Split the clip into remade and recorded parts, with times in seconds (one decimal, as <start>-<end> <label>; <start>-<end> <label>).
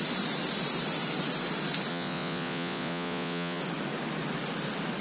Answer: 0.0-1.9 recorded; 1.9-3.6 remade; 3.6-5.0 recorded